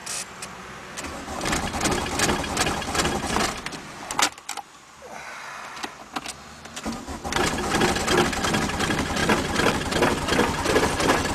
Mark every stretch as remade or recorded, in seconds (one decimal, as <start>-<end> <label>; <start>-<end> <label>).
0.0-11.3 recorded